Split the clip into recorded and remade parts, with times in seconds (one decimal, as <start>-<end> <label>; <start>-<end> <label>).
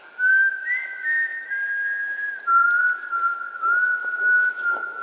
0.0-0.7 remade; 0.7-5.0 recorded